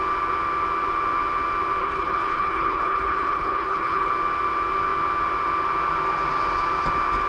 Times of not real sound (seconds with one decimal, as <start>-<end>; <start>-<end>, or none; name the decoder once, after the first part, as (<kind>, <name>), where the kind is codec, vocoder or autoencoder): 1.8-4.1 (codec, HILCodec)